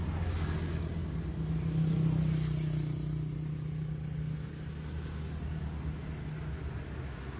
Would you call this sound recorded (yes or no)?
yes